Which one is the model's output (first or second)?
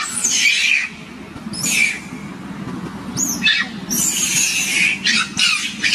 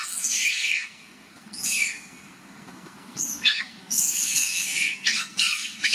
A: second